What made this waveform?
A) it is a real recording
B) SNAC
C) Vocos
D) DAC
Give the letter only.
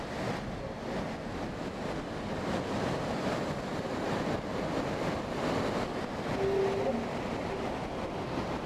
A